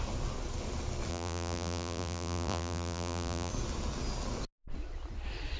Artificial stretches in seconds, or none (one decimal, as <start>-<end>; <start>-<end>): 1.1-3.5